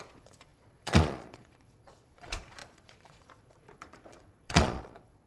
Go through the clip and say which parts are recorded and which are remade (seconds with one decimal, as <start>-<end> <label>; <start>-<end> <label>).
0.0-5.3 remade